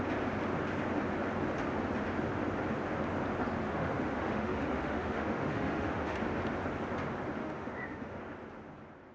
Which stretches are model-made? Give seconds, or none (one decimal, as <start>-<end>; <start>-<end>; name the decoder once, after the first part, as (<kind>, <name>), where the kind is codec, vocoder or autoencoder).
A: 3.7-6.2 (autoencoder, DAC-VAE); 7.4-8.2